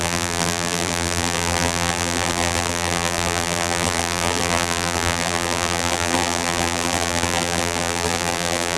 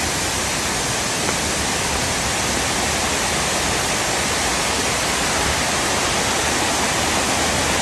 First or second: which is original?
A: second